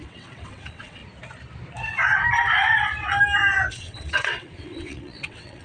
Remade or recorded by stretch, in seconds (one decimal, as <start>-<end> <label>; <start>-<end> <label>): 0.0-1.0 remade; 1.0-3.7 recorded; 3.7-5.6 remade